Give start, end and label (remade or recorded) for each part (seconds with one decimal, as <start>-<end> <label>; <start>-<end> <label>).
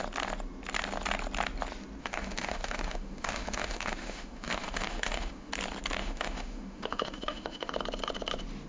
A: 0.0-2.0 recorded; 2.0-5.5 remade; 5.5-6.0 recorded; 6.0-7.7 remade; 7.7-8.7 recorded